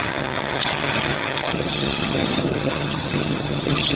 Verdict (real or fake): fake